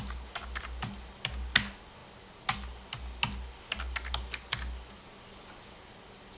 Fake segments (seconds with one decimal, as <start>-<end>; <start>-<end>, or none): none